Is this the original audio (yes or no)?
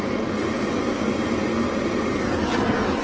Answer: yes